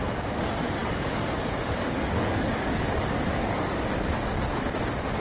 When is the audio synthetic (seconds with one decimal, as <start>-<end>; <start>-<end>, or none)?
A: 0.8-3.9